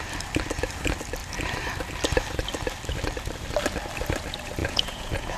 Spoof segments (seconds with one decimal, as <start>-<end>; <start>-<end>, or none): 4.6-5.4